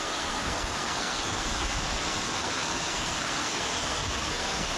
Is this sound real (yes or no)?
no